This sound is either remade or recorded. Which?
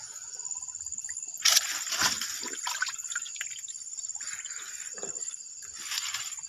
recorded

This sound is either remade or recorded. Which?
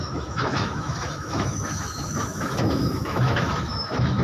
remade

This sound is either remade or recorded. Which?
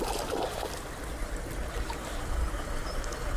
recorded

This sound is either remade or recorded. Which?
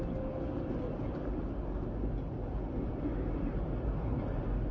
recorded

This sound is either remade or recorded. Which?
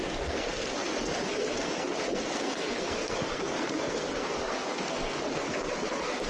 remade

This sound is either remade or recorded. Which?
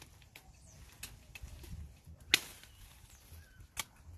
recorded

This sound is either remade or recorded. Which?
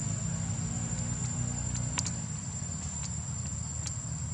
recorded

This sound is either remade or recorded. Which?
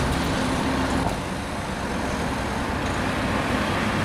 recorded